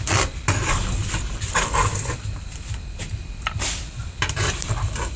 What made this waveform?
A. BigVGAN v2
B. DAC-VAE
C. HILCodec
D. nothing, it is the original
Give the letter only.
A